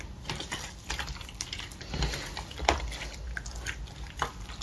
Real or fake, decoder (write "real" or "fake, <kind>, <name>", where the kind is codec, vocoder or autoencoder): real